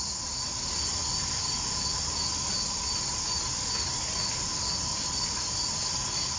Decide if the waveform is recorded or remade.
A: recorded